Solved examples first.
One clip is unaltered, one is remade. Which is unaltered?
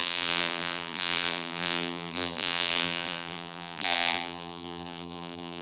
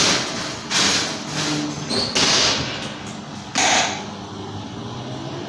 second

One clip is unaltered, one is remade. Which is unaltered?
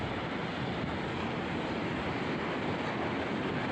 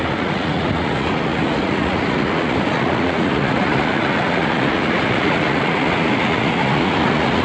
first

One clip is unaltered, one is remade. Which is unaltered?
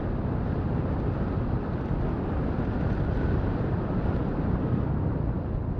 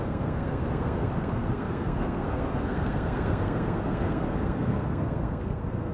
first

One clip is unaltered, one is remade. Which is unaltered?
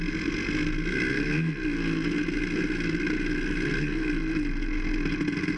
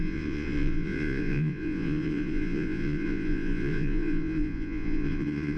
first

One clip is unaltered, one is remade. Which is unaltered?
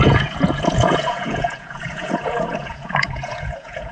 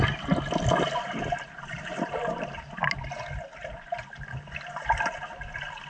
second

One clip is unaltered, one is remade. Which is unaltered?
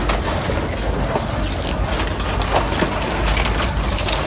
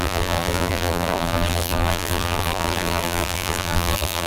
first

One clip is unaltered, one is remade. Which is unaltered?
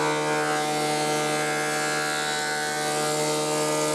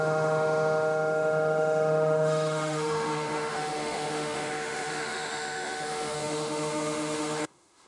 first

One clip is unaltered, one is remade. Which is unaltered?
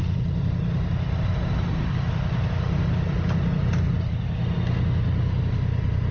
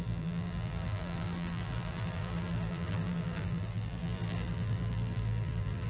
first